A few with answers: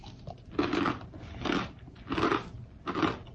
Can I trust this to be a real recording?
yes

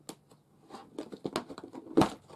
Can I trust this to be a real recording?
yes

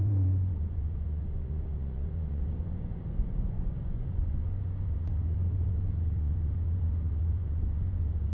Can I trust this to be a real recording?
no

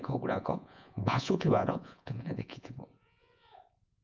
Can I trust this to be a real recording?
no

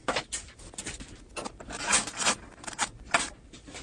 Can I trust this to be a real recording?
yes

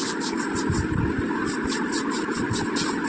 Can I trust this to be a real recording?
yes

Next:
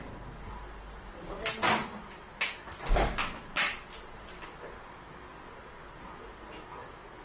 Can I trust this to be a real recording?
yes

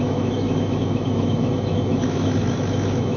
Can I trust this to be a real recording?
no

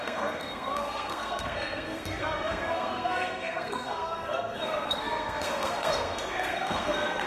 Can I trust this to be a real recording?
no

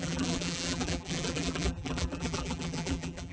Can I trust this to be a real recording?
no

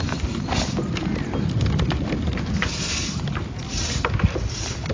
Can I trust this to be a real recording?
yes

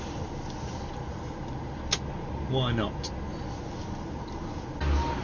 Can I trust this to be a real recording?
yes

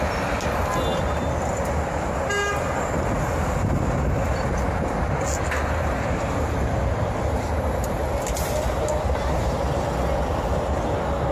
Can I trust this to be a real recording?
yes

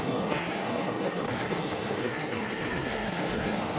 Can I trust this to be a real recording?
no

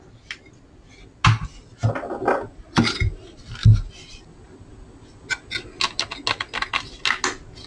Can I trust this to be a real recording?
yes